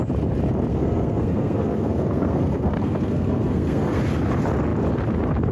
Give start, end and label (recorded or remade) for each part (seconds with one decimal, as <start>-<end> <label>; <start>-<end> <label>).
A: 0.0-0.7 recorded; 0.7-4.0 remade; 4.0-5.5 recorded

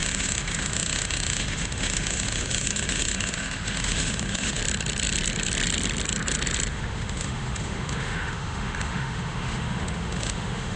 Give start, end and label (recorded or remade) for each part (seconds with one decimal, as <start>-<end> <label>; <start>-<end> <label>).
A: 0.0-4.6 remade; 4.6-6.7 recorded; 6.7-10.8 remade